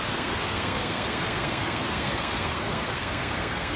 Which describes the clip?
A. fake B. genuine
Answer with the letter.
A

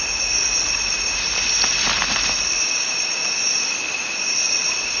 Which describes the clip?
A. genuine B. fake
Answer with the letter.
A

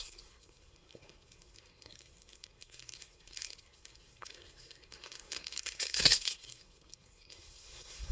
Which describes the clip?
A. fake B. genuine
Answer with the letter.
A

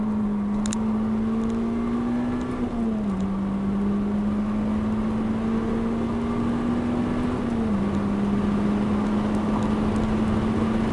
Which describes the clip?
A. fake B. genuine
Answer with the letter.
B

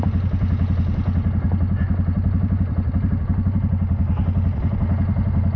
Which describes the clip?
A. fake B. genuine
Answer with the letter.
B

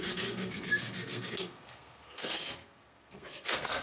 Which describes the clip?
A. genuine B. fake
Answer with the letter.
B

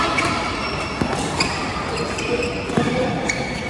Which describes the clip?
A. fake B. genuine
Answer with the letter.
B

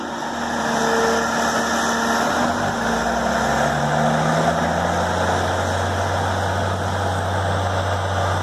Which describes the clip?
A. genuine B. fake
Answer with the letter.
A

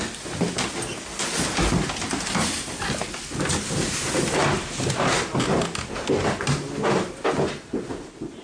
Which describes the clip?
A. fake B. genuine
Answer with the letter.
B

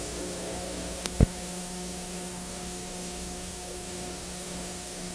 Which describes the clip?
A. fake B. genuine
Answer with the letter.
A